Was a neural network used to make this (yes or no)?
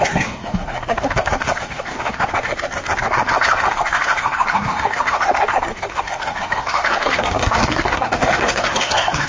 yes